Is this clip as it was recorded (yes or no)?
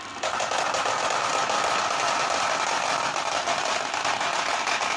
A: yes